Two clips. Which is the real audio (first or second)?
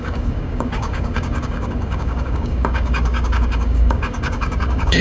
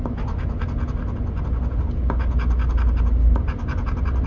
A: second